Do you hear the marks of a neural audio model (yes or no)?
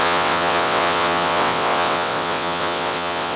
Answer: yes